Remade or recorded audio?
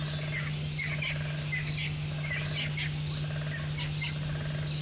recorded